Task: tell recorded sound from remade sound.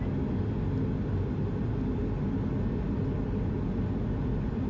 recorded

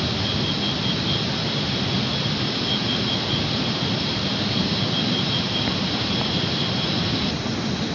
recorded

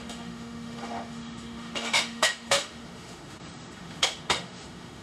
remade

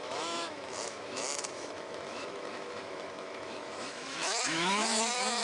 remade